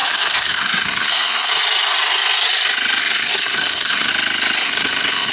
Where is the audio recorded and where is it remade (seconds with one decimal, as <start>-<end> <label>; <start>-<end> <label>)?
0.0-1.5 remade; 1.5-3.0 recorded; 3.0-4.1 remade; 4.1-4.6 recorded; 4.6-5.3 remade